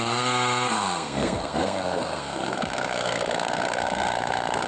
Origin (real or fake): fake